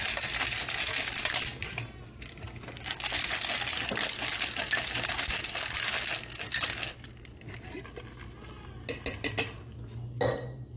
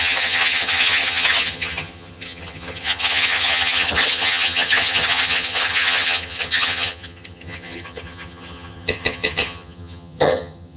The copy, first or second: second